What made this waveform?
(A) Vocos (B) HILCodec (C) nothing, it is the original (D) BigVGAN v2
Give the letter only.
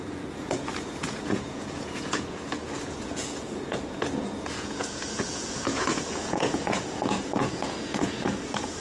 A